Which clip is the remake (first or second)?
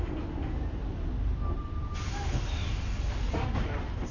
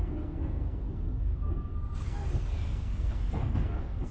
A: second